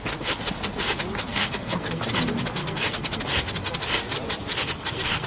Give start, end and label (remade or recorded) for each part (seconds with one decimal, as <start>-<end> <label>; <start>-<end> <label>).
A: 0.0-1.3 recorded; 1.3-2.0 remade; 2.0-2.6 recorded; 2.6-3.2 remade; 3.2-4.5 recorded; 4.5-5.3 remade